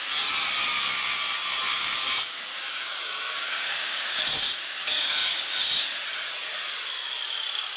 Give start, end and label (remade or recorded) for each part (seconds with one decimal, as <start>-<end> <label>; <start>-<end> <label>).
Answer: 0.0-1.7 recorded; 1.7-5.9 remade; 5.9-7.8 recorded